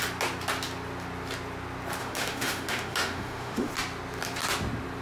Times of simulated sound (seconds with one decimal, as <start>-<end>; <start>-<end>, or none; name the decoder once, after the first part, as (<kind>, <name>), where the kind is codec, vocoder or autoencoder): 2.0-3.7 (autoencoder, DAC-VAE)